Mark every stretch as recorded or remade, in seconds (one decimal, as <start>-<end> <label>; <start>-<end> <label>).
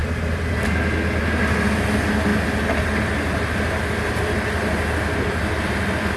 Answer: 0.0-0.5 remade; 0.5-6.2 recorded